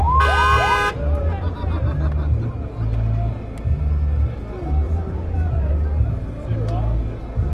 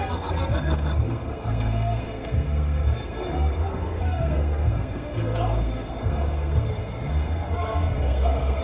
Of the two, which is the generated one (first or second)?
second